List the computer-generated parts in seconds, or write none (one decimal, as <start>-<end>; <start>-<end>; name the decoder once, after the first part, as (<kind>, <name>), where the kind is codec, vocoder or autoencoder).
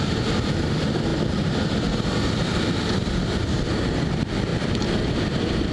1.1-3.8 (vocoder, BigVGAN v2); 4.5-5.7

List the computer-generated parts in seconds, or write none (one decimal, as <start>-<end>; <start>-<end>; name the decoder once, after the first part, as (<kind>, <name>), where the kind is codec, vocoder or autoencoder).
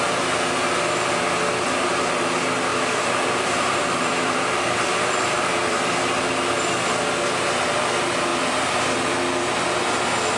2.7-6.0 (vocoder, BigVGAN v2); 8.3-9.1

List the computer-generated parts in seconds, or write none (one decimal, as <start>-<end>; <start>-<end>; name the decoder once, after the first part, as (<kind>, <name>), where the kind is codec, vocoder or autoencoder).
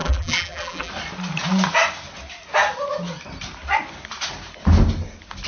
0.0-0.9 (vocoder, BigVGAN v2)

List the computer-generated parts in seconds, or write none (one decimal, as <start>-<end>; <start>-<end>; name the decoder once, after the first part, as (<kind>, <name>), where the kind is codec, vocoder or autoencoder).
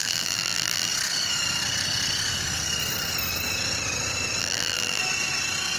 0.0-0.9 (vocoder, BigVGAN v2); 4.4-5.0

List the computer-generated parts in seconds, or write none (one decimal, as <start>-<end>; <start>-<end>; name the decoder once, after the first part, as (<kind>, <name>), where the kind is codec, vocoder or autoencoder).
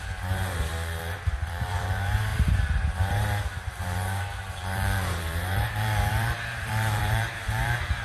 0.0-8.0 (vocoder, BigVGAN v2)